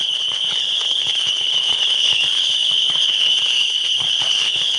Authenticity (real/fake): fake